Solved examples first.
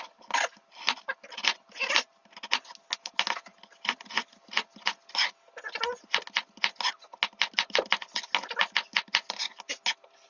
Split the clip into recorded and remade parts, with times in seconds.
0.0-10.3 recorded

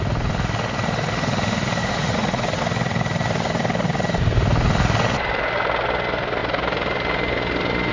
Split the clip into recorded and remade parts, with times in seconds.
0.0-1.8 recorded; 1.8-2.6 remade; 2.6-7.9 recorded